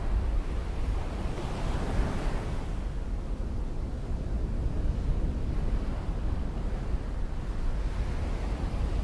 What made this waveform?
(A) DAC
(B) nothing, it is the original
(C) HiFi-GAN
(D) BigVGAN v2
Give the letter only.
B